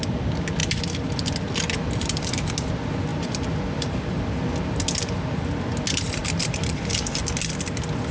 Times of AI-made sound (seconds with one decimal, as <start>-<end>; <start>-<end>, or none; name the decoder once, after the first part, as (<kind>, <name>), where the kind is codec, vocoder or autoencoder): 0.6-2.3 (vocoder, BigVGAN v2); 3.1-4.3; 6.2-7.3